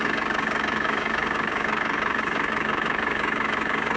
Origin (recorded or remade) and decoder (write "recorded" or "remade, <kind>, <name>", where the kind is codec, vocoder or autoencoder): remade, codec, DAC